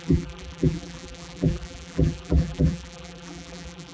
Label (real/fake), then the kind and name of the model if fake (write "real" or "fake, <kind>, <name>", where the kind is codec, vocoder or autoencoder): fake, vocoder, BigVGAN v2